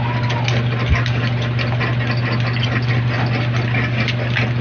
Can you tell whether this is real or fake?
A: real